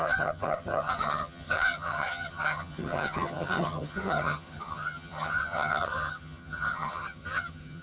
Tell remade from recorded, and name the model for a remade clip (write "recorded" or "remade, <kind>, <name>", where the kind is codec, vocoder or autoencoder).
remade, vocoder, HiFi-GAN